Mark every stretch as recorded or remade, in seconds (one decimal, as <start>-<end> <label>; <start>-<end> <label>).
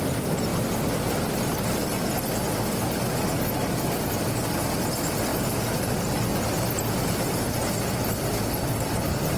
0.0-9.4 recorded